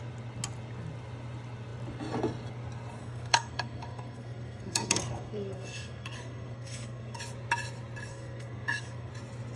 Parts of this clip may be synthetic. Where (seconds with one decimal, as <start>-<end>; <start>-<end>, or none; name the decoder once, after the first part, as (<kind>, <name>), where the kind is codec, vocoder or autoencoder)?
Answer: 3.0-7.2 (codec, SNAC); 8.1-9.1